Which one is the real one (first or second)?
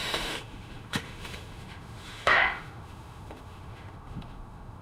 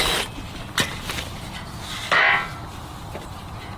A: second